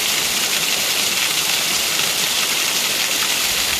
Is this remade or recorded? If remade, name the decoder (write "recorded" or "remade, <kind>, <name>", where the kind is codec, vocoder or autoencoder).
recorded